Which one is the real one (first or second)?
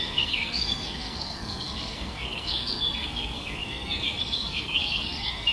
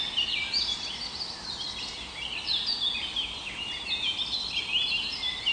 second